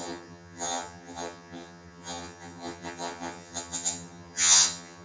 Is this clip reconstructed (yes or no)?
yes